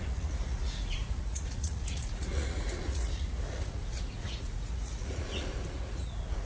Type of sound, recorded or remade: remade